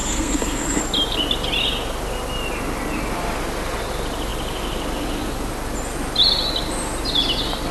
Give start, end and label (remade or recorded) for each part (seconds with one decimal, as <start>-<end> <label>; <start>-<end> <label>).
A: 0.0-0.8 remade; 0.8-7.7 recorded